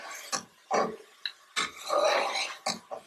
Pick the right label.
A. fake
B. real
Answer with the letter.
B